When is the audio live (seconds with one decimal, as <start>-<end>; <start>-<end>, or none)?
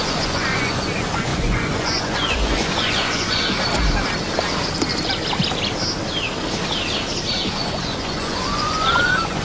3.4-7.5